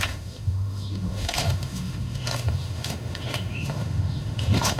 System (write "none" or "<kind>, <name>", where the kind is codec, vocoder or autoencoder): autoencoder, DAC-VAE